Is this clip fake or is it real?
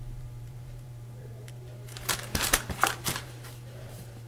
fake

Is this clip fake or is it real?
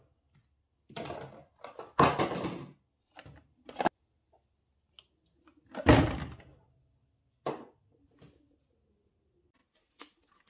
real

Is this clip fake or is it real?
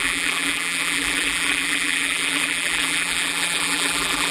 fake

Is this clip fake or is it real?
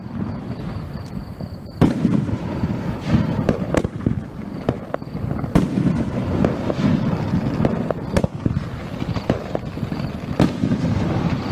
fake